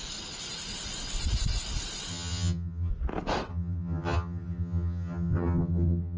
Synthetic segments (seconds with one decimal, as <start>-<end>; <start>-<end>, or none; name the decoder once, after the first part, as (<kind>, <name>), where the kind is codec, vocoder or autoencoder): 2.1-2.9 (vocoder, HiFi-GAN); 3.5-6.2